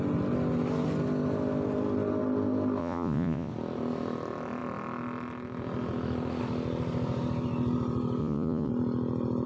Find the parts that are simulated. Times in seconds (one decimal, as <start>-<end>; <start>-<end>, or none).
2.8-3.5; 8.2-8.7